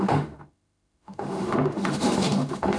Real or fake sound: fake